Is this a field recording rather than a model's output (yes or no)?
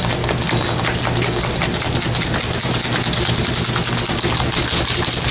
yes